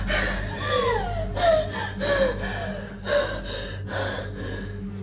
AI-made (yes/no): no